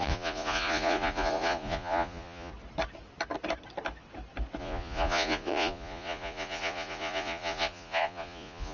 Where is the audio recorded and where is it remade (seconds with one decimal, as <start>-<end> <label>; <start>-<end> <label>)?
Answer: 0.0-2.5 remade; 2.5-4.6 recorded; 4.6-8.7 remade

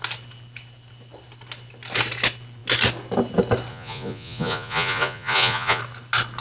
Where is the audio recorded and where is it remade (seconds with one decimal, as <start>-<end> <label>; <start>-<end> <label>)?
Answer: 0.0-3.7 recorded; 3.7-5.8 remade; 5.8-6.4 recorded

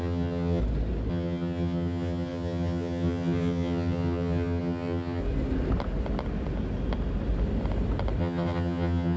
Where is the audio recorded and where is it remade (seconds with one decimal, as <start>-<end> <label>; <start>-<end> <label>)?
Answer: 0.0-0.6 remade; 0.6-1.1 recorded; 1.1-5.2 remade; 5.2-8.2 recorded; 8.2-9.2 remade

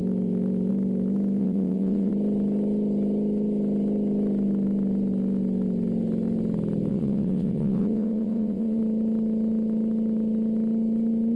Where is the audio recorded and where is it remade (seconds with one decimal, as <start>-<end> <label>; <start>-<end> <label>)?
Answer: 0.0-1.4 recorded; 1.4-2.1 remade; 2.1-6.9 recorded; 6.9-8.8 remade; 8.8-11.4 recorded

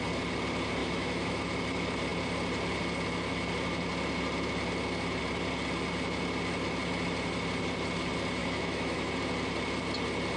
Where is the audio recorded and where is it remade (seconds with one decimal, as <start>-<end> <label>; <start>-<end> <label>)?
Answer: 0.0-0.8 recorded; 0.8-1.4 remade; 1.4-8.4 recorded; 8.4-9.1 remade; 9.1-10.4 recorded

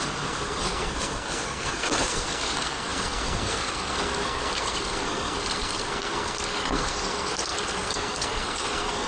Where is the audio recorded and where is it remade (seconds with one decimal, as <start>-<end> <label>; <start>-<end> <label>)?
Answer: 0.0-9.1 remade

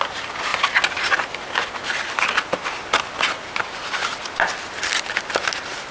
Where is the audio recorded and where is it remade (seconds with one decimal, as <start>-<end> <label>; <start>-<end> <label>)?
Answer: 0.0-5.9 recorded

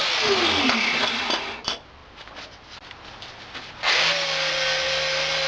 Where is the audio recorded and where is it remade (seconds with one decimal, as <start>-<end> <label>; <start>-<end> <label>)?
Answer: 0.0-5.5 recorded